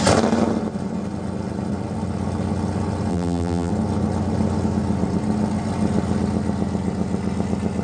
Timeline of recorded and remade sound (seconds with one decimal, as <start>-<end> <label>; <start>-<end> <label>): 0.0-3.1 recorded; 3.1-3.7 remade; 3.7-7.8 recorded